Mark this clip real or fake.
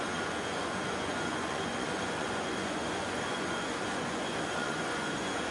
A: fake